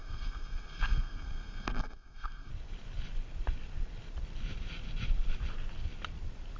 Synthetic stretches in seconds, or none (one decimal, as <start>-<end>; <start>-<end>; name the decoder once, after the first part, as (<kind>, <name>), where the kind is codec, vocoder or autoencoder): 0.0-2.5 (codec, SNAC)